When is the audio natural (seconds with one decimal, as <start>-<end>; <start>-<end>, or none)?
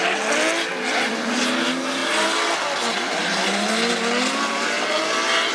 0.0-5.5